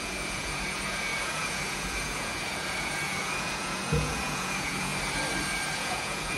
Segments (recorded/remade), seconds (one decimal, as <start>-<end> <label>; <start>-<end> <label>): 0.0-4.9 remade; 4.9-5.7 recorded; 5.7-6.4 remade